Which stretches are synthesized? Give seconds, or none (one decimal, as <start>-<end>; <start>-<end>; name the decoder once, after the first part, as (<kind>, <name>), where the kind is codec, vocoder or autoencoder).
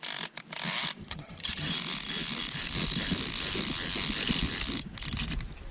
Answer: 1.0-1.7 (vocoder, HiFi-GAN)